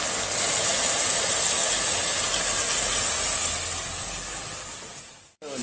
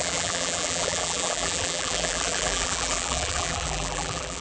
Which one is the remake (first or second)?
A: second